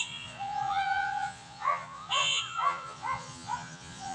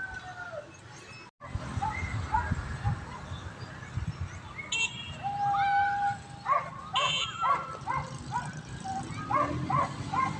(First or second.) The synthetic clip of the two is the first